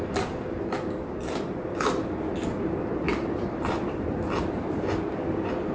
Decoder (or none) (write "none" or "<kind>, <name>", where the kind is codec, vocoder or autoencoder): none